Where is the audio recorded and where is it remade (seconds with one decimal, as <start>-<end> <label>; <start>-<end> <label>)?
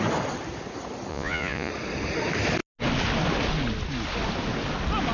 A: 0.0-1.1 recorded; 1.1-1.7 remade; 1.7-5.1 recorded